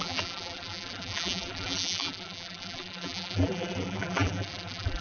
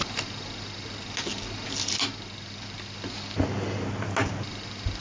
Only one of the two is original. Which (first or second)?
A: second